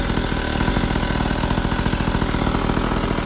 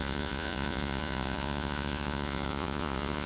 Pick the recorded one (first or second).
first